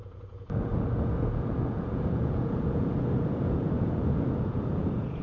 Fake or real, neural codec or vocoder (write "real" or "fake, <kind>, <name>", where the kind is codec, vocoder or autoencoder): fake, vocoder, Vocos